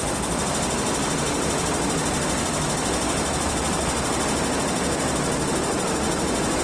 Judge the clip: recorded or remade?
recorded